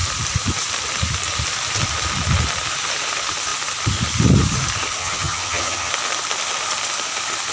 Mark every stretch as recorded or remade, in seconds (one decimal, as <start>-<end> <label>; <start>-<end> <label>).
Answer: 0.0-5.0 recorded; 5.0-5.9 remade; 5.9-7.5 recorded

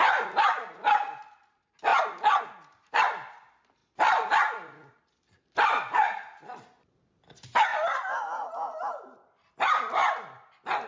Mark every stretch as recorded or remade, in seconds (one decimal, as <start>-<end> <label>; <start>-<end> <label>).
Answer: 0.0-10.9 recorded

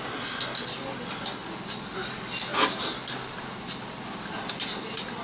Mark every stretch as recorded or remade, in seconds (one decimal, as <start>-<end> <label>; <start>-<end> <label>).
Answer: 0.0-5.2 recorded

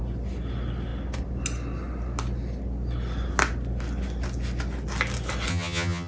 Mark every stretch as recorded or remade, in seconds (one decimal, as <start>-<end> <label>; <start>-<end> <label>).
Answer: 0.0-5.5 recorded; 5.5-6.1 remade

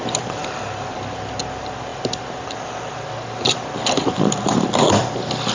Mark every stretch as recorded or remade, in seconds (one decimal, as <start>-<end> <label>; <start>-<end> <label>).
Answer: 0.0-5.5 recorded

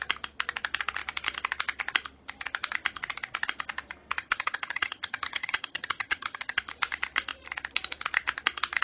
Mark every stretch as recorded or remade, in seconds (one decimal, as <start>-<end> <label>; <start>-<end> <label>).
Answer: 0.0-4.2 recorded; 4.2-6.6 remade; 6.6-8.8 recorded